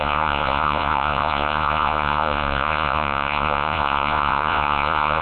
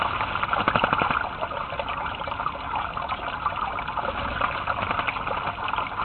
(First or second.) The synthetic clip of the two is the first